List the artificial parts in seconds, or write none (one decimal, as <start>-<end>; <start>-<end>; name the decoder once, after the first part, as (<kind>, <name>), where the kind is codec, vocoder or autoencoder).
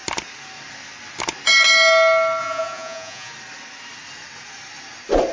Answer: 2.4-3.3 (vocoder, Vocos)